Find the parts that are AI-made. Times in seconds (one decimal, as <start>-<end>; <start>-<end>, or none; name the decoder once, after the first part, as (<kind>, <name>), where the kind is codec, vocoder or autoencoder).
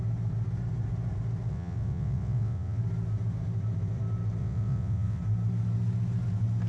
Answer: 1.5-2.8 (vocoder, WaveNeXt); 4.4-5.2